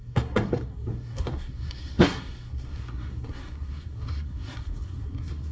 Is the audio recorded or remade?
remade